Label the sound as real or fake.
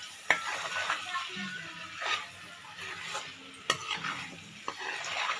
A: real